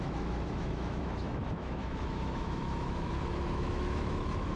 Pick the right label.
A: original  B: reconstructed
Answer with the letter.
B